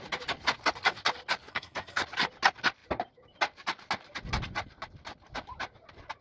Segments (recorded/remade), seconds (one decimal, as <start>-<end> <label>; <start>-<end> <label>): 0.0-1.5 recorded; 1.5-2.0 remade; 2.0-6.2 recorded